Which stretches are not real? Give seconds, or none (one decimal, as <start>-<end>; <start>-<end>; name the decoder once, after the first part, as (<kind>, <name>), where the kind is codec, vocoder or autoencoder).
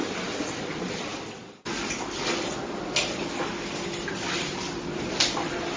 none